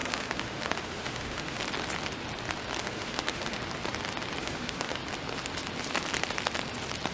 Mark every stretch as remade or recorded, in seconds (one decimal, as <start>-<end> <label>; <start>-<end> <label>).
0.0-1.6 remade; 1.6-2.8 recorded; 2.8-3.6 remade; 3.6-4.4 recorded; 4.4-5.0 remade; 5.0-7.1 recorded